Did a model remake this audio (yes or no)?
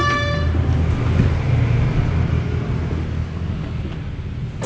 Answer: no